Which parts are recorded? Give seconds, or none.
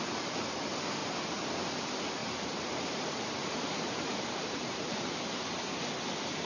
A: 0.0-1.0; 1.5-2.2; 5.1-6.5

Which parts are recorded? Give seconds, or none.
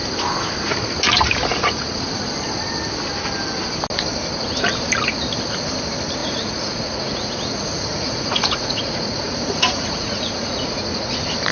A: 0.0-1.5; 2.2-6.2; 11.1-11.5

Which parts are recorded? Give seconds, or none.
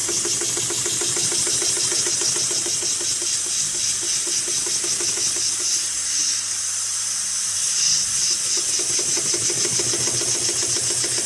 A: 0.0-11.3